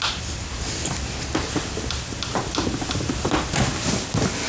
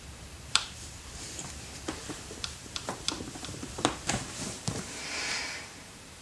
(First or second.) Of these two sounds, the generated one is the second